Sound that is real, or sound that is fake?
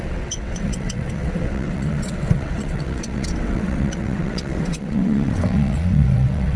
fake